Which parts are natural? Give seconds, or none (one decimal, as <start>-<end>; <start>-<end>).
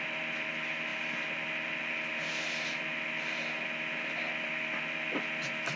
0.0-5.8